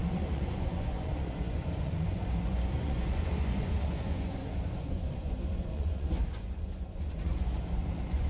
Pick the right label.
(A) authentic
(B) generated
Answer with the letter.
B